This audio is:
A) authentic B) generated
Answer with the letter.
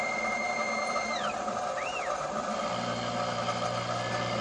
A